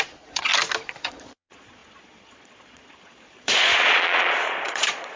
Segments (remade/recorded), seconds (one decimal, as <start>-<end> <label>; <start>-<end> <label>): 0.0-0.5 remade; 0.5-1.0 recorded; 1.0-5.2 remade